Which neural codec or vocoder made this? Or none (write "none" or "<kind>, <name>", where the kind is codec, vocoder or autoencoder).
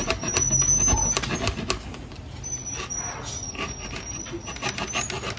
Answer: none